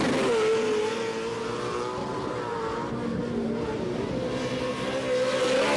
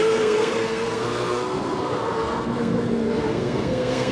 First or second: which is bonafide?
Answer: first